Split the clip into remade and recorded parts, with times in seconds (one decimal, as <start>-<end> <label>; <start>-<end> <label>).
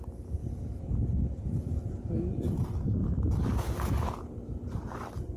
0.0-5.4 recorded